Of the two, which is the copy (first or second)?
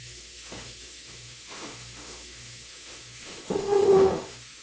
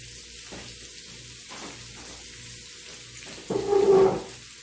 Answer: first